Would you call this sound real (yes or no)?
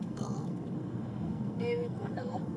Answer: no